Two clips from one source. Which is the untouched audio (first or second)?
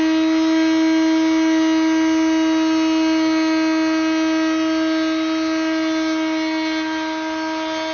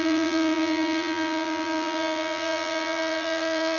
first